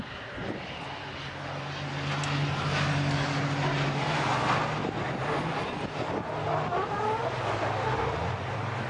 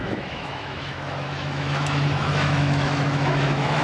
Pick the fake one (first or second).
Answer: second